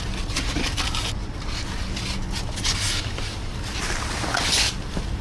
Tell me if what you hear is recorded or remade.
recorded